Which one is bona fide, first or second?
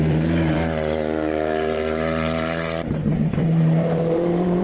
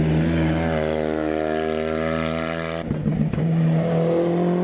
second